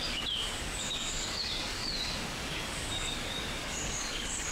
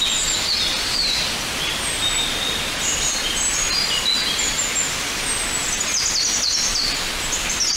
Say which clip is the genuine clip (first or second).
second